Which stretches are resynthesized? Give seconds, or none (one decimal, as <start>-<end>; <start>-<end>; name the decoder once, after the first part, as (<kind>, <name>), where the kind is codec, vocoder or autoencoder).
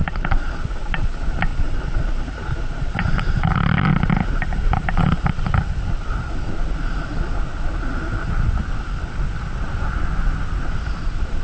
0.0-0.5 (vocoder, BigVGAN v2); 1.5-5.3